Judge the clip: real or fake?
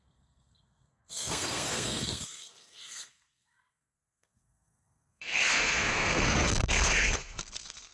fake